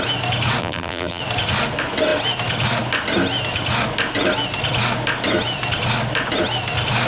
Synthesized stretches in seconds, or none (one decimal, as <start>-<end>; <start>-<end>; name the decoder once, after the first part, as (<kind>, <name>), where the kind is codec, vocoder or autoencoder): 0.6-1.2 (vocoder, BigVGAN v2)